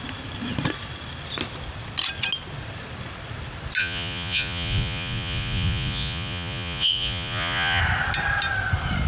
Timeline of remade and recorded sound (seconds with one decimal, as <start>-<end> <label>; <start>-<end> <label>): 0.0-3.8 recorded; 3.8-7.8 remade; 7.8-9.1 recorded